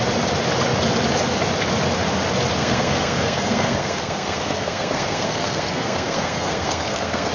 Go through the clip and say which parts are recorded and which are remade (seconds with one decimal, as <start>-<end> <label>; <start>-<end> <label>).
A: 0.0-2.6 recorded; 2.6-7.3 remade

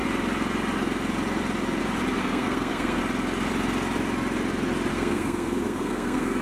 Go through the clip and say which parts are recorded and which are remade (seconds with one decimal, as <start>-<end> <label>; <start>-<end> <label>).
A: 0.0-2.2 recorded; 2.2-3.0 remade; 3.0-4.9 recorded; 4.9-6.4 remade

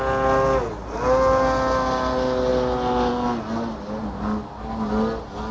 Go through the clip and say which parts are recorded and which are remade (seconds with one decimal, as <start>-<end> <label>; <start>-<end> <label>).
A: 0.0-5.5 recorded

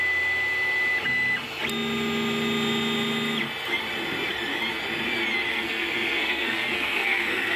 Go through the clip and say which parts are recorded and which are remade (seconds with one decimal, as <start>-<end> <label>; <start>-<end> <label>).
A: 0.0-5.5 recorded; 5.5-7.6 remade

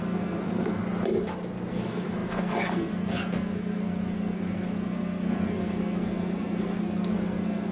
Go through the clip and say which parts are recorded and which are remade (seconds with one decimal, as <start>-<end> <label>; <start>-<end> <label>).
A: 0.0-0.8 remade; 0.8-1.7 recorded; 1.7-7.7 remade